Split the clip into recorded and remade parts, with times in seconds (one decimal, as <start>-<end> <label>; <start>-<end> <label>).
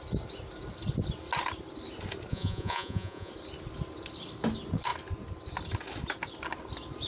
0.0-2.3 recorded; 2.3-3.3 remade; 3.3-7.1 recorded